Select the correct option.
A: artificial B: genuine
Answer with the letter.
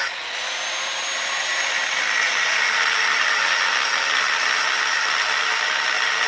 B